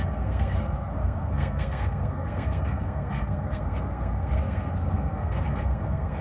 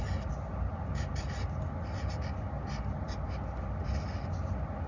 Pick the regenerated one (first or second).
first